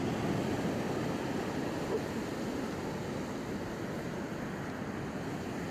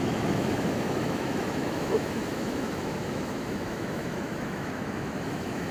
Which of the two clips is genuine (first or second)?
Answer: first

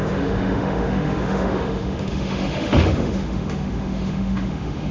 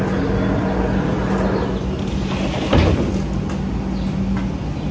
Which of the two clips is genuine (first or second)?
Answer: second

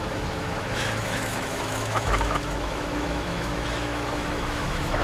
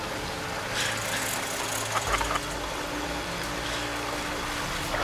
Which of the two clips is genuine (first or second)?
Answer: second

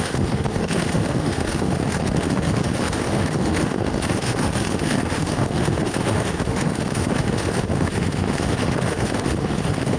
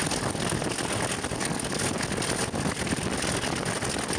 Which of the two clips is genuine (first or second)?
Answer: second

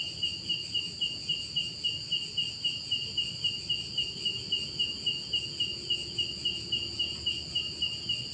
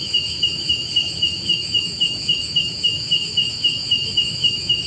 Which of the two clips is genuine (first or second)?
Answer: first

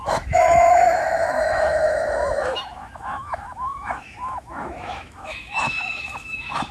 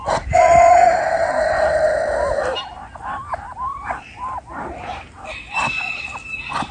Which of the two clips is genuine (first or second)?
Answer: second